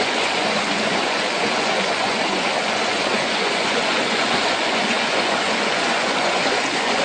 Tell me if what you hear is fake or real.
fake